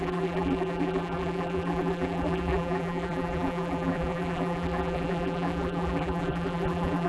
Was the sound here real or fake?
fake